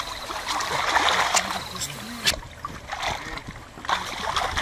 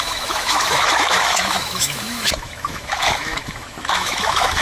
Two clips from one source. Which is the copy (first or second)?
second